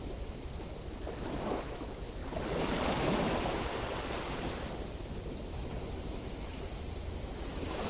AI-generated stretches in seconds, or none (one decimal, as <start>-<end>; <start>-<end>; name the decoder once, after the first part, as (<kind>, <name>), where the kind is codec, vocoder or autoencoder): 0.0-2.2 (autoencoder, DAC-VAE); 2.9-3.7; 4.9-7.9